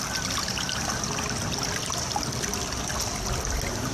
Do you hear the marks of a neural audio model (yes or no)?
no